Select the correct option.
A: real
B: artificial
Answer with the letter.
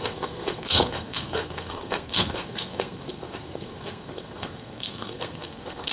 B